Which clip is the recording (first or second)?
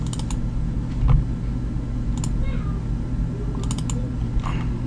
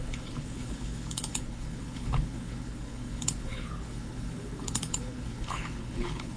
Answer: first